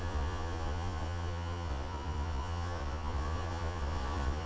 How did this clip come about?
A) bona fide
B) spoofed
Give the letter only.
B